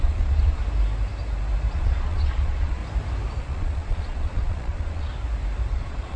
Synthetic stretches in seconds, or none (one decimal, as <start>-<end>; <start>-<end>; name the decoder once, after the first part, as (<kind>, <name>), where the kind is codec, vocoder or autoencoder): 0.0-0.6 (vocoder, Vocos); 1.7-2.8; 3.4-5.1; 5.7-6.2